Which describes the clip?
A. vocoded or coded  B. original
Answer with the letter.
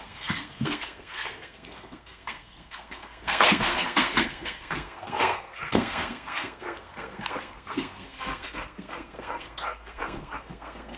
A